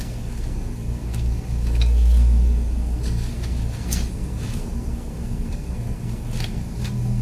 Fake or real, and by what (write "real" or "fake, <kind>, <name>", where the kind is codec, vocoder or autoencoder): fake, codec, SNAC